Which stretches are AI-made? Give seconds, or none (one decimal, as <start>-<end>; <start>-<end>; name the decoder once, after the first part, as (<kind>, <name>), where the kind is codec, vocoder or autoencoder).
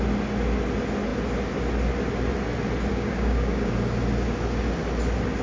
2.9-3.7 (codec, DAC)